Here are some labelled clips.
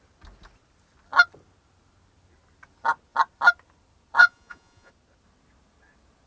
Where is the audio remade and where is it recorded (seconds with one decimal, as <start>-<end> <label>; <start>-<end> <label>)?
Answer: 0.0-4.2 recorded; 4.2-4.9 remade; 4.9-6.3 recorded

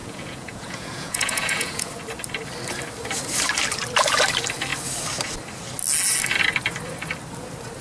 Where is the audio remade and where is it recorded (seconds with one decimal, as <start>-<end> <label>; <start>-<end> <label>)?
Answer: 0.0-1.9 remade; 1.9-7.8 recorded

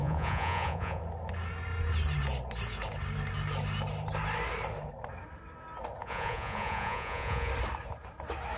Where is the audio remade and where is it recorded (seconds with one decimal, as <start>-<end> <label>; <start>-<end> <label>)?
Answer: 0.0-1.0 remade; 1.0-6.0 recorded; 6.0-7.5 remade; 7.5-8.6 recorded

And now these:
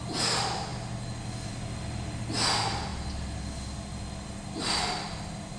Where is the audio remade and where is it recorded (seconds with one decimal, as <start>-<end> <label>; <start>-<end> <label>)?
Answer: 0.0-5.6 recorded